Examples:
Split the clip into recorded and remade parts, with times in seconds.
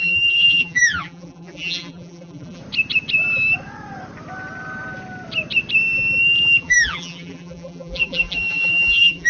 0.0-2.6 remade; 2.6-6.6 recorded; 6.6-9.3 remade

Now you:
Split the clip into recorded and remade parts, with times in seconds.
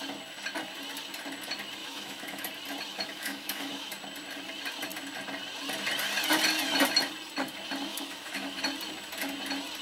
0.0-1.8 recorded; 1.8-2.5 remade; 2.5-2.9 recorded; 2.9-3.9 remade; 3.9-7.9 recorded; 7.9-8.6 remade; 8.6-9.8 recorded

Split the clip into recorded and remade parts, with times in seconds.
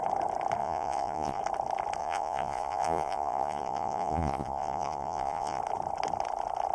0.0-0.6 recorded; 0.6-1.4 remade; 1.4-2.0 recorded; 2.0-5.6 remade; 5.6-6.7 recorded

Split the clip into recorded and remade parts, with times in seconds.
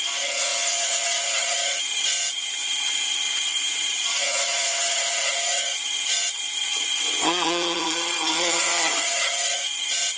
0.0-10.2 remade